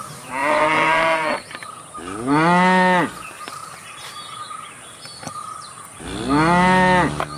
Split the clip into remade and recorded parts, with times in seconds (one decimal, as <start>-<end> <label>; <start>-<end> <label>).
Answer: 0.0-0.4 recorded; 0.4-1.5 remade; 1.5-7.4 recorded